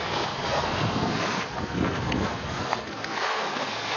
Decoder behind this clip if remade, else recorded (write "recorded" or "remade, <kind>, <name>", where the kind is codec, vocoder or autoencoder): remade, codec, SNAC